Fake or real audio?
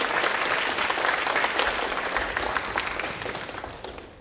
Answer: real